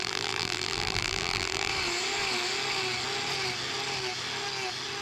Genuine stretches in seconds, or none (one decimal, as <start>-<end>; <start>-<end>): 1.7-5.0